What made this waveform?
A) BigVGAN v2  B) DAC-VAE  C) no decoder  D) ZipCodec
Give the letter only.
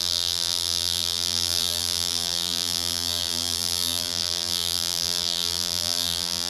A